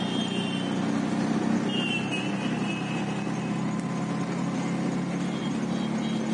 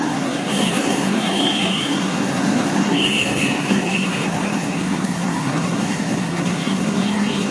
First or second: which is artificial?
second